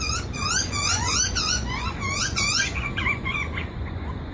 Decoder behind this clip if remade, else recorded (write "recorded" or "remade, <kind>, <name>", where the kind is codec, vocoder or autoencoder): remade, vocoder, Vocos